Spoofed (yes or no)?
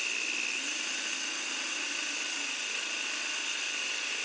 no